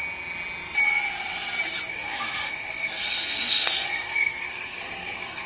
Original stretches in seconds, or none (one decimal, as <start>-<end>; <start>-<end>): 0.0-1.9